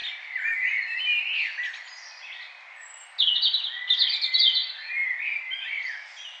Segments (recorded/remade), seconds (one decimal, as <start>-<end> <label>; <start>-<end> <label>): 0.0-6.4 recorded